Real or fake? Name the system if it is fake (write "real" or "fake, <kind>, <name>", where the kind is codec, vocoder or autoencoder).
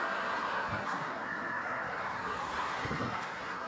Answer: fake, codec, SNAC